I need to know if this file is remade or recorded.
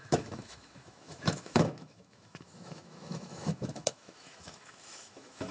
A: remade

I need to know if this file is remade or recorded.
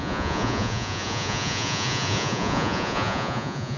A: remade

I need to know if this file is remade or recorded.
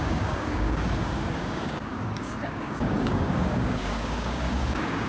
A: remade